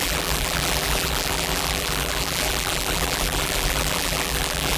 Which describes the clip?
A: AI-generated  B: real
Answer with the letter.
A